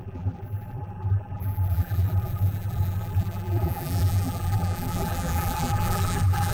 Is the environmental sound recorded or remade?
remade